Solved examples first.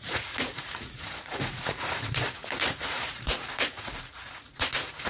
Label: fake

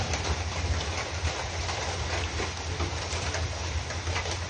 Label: real